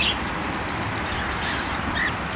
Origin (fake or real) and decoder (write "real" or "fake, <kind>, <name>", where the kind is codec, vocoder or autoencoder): real